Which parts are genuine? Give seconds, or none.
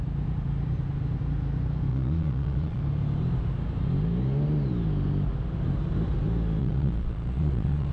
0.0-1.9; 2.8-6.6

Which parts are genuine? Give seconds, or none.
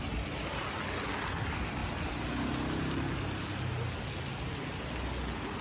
0.0-5.6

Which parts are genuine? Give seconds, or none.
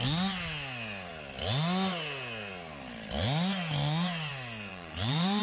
0.0-4.7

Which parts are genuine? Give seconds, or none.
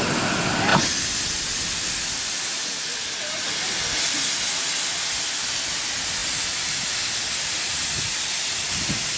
0.0-9.2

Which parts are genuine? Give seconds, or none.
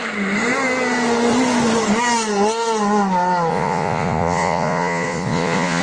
0.0-3.5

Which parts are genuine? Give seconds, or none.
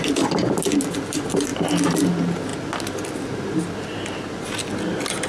0.0-5.3